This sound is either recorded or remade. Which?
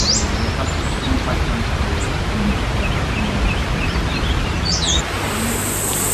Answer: recorded